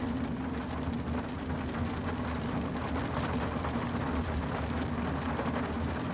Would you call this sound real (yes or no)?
yes